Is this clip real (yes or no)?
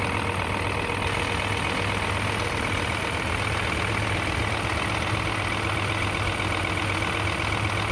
yes